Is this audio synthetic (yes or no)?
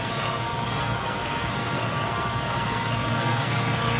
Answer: yes